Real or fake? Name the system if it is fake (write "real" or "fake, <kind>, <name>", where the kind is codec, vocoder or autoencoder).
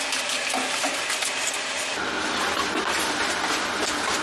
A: real